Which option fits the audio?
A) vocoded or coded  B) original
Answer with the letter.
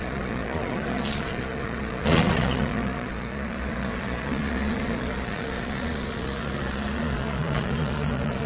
A